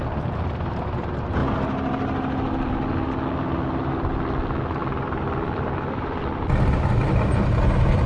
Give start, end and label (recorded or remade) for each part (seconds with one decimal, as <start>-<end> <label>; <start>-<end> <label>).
0.0-8.1 recorded